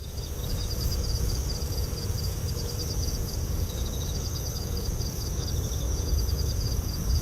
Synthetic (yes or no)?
yes